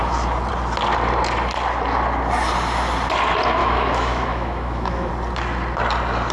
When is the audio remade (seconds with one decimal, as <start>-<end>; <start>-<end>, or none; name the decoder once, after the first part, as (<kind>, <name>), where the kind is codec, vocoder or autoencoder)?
3.6-5.1 (autoencoder, DAC-VAE)